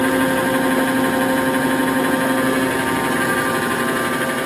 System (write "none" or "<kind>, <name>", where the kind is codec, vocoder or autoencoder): none